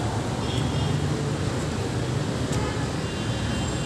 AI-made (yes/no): no